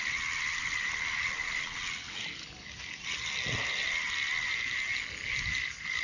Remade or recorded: recorded